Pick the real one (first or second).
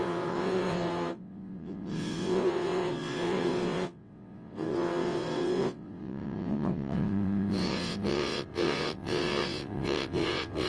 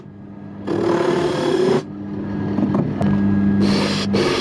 second